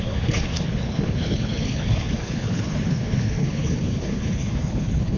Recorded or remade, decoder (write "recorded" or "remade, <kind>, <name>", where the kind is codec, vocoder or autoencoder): remade, codec, HILCodec